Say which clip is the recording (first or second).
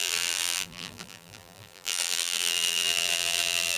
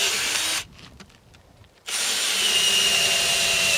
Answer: second